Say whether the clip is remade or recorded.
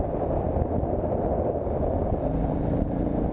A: remade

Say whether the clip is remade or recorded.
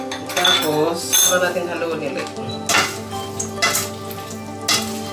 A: recorded